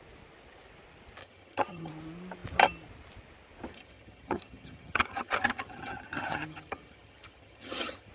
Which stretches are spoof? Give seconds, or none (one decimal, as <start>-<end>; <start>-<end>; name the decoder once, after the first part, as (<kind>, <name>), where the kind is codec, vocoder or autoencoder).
1.2-1.9 (vocoder, HiFi-GAN); 3.7-8.1